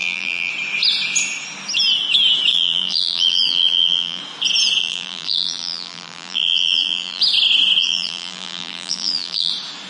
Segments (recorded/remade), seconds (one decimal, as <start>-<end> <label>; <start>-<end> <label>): 0.0-0.5 remade; 0.5-2.5 recorded; 2.5-4.2 remade; 4.2-4.8 recorded; 4.8-7.2 remade; 7.2-7.8 recorded; 7.8-9.5 remade; 9.5-9.9 recorded